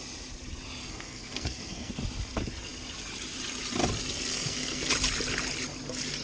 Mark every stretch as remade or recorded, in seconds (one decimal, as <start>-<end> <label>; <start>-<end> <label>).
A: 0.0-0.8 recorded; 0.8-1.9 remade; 1.9-4.3 recorded; 4.3-4.9 remade; 4.9-6.2 recorded